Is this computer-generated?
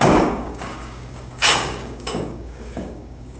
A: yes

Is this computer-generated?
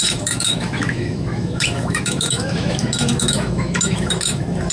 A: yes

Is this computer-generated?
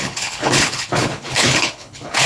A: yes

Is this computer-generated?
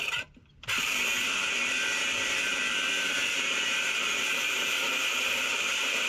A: yes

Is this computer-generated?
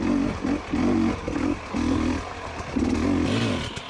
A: no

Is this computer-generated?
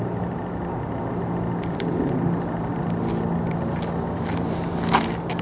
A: no